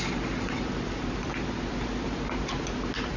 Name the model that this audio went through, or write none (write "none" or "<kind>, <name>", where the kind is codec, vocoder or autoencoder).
none